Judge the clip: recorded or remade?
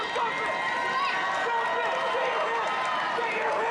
recorded